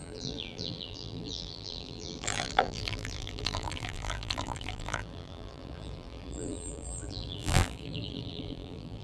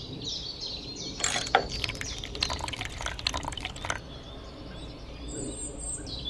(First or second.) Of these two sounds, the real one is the second